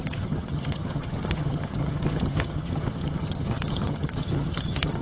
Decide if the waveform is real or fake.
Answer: fake